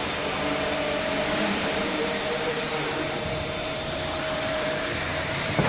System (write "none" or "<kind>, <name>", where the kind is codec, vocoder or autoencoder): vocoder, BigVGAN v2